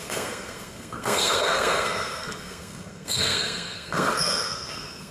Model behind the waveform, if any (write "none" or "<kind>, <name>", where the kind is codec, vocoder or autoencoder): codec, SNAC